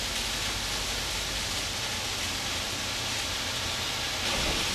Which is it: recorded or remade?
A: recorded